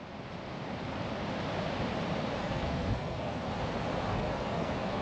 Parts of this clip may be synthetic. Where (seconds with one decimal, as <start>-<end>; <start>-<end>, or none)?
2.4-3.5; 4.1-5.0